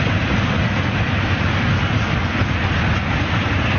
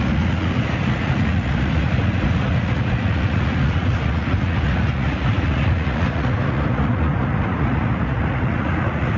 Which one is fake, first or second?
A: second